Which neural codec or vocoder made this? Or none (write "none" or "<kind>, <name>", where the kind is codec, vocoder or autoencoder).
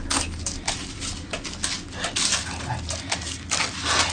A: none